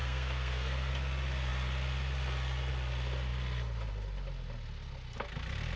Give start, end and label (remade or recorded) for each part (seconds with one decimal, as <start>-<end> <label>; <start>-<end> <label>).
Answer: 0.0-0.9 remade; 0.9-5.8 recorded